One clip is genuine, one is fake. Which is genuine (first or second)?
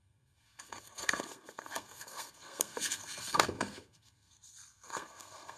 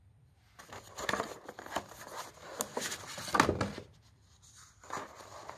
second